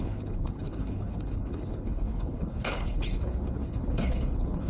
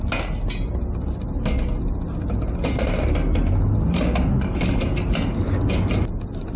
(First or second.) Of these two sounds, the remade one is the first